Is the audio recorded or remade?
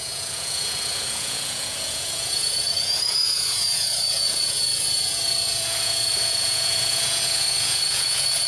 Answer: remade